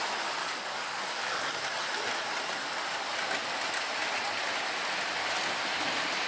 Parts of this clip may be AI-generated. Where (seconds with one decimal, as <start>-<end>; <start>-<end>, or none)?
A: 0.4-1.5